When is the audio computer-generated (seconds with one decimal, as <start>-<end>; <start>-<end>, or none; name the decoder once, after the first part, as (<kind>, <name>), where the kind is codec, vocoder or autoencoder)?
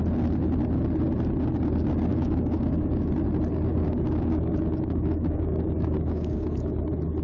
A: 2.1-3.1 (codec, DAC); 3.7-6.7